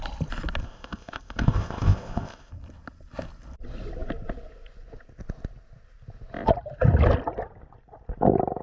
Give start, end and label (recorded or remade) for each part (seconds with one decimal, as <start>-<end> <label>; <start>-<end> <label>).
0.0-0.6 recorded; 0.6-2.5 remade; 2.5-8.6 recorded